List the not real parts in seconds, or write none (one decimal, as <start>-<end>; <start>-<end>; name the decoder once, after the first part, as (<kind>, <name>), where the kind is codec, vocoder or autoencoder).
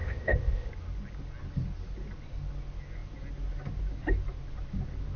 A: 0.0-0.7 (codec, ZipCodec)